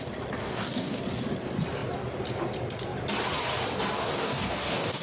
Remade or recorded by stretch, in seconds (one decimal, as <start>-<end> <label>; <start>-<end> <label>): 0.0-0.4 recorded; 0.4-1.0 remade; 1.0-4.1 recorded; 4.1-5.0 remade